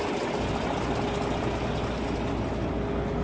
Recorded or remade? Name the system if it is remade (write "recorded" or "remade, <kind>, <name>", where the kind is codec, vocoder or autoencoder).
recorded